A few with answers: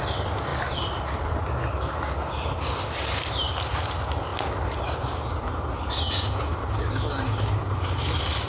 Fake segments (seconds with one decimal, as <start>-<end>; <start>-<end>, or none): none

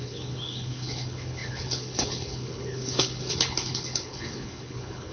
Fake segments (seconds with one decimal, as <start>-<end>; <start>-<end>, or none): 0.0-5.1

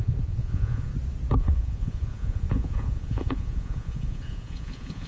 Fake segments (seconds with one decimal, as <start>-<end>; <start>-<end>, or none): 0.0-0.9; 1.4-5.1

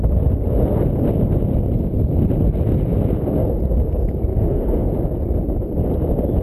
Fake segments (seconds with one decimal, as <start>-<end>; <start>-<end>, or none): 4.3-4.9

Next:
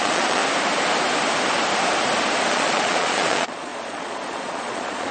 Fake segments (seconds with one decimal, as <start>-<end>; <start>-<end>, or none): 0.0-0.4; 2.5-5.1